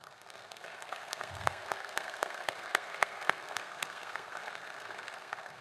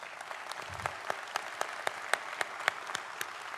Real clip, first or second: second